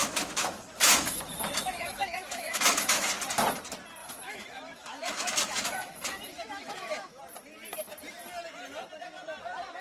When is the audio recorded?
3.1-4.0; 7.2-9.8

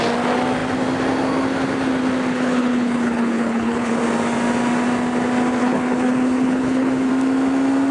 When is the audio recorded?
0.0-2.3; 4.0-5.6; 7.1-7.9

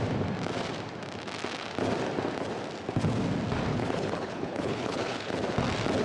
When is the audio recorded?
0.0-3.7; 5.3-6.0